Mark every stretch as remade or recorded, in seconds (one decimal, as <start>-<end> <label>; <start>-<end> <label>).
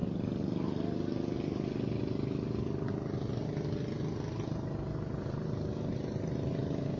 0.0-7.0 recorded